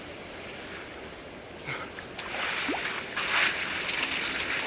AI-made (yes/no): no